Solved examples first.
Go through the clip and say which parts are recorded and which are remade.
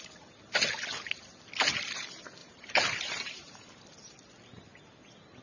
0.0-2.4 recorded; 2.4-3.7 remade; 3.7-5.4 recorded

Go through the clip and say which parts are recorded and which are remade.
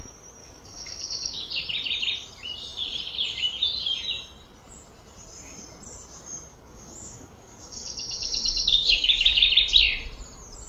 0.0-0.4 recorded; 0.4-1.5 remade; 1.5-6.5 recorded; 6.5-9.5 remade; 9.5-10.7 recorded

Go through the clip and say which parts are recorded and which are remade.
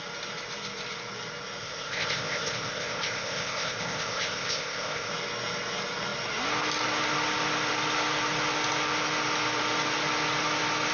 0.0-1.6 recorded; 1.6-5.1 remade; 5.1-10.9 recorded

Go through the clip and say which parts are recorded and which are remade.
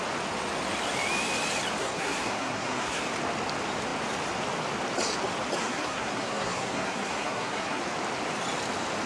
0.0-1.8 recorded; 1.8-3.0 remade; 3.0-5.6 recorded; 5.6-7.8 remade; 7.8-9.1 recorded